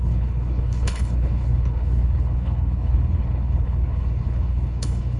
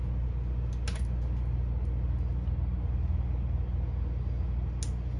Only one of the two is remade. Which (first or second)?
first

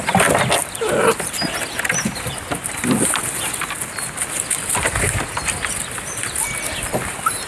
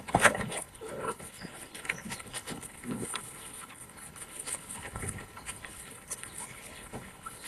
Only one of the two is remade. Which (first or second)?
second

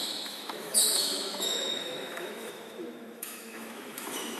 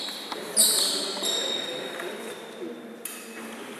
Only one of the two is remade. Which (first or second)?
first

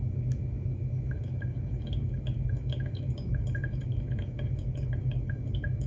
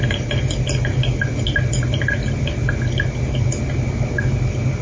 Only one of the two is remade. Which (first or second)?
first